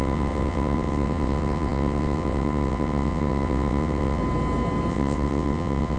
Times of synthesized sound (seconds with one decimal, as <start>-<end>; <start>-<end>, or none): 0.0-4.2; 4.9-6.0